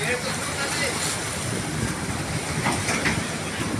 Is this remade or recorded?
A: recorded